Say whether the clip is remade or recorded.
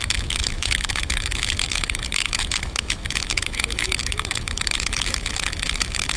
remade